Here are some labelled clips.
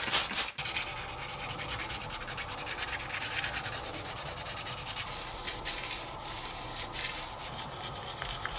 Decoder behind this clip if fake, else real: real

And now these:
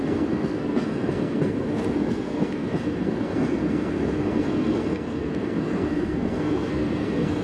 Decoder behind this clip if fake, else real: fake, codec, SNAC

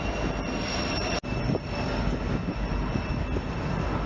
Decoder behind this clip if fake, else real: real